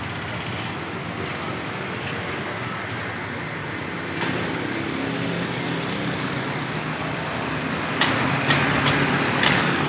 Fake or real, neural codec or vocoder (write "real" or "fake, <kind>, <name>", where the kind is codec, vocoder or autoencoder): real